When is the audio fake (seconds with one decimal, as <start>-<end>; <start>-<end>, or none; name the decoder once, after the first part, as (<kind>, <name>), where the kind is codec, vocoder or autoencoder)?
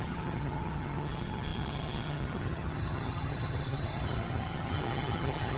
0.0-5.6 (vocoder, HiFi-GAN)